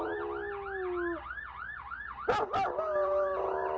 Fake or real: real